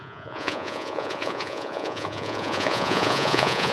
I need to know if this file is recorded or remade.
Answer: remade